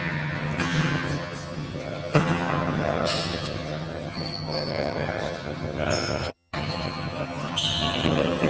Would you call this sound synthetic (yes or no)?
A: yes